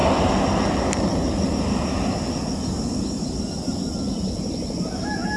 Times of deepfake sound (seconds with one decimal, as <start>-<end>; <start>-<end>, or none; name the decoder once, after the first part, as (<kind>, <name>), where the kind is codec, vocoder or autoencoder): none